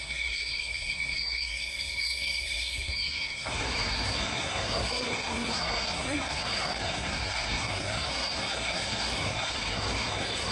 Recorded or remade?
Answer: remade